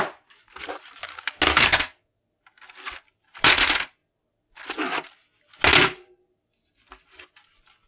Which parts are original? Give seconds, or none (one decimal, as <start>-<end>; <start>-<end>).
0.0-1.5; 2.2-7.9